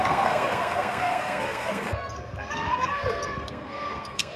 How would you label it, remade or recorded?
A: remade